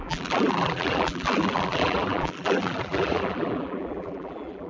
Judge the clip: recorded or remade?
remade